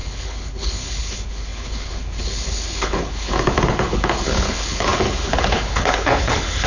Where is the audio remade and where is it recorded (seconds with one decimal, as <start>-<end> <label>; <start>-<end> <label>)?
0.0-6.7 remade